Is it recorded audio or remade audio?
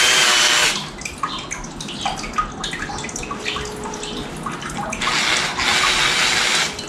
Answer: recorded